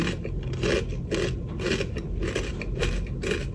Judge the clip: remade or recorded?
recorded